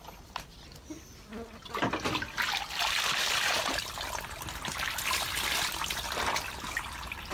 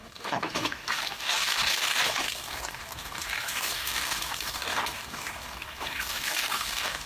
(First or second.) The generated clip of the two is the second